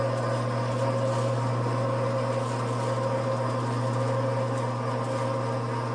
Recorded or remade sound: recorded